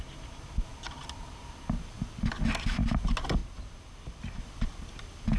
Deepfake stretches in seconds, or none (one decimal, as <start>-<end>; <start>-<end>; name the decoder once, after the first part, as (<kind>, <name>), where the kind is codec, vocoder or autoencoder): none